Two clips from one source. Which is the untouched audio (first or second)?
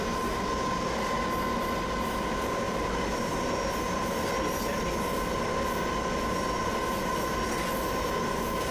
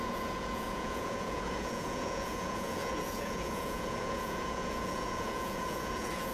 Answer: first